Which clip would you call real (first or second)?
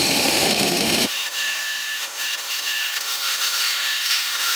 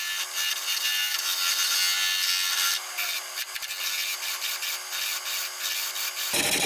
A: second